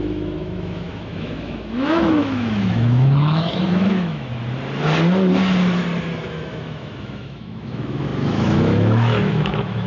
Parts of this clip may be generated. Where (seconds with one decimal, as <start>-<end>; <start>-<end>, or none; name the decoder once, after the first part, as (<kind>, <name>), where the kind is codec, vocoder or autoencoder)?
0.0-4.3 (autoencoder, DAC-VAE); 6.2-9.9